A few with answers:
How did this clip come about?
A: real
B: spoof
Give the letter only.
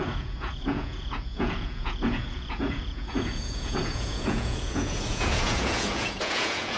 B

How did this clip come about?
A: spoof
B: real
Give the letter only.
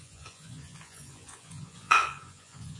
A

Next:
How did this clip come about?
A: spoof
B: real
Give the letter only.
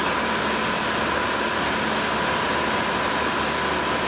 B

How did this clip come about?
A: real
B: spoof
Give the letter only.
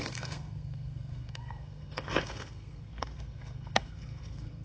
B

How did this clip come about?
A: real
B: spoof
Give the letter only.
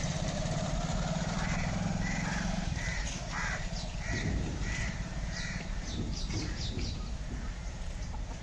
B